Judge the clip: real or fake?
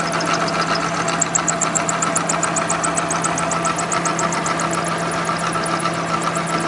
real